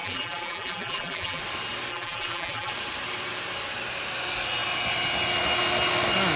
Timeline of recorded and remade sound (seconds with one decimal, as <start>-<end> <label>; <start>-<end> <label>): 0.0-1.4 remade; 1.4-1.9 recorded; 1.9-2.7 remade; 2.7-6.4 recorded